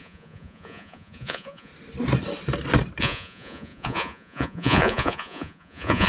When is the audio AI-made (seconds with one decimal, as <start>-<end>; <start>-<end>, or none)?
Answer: 0.0-1.7; 3.0-6.1